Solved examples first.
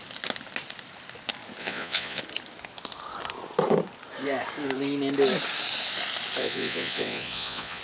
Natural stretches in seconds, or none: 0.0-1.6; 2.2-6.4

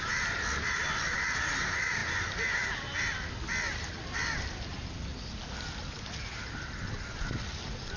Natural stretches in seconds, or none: 0.0-8.0

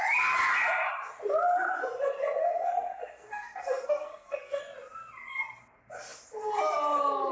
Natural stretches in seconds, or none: 0.0-2.4; 4.6-7.3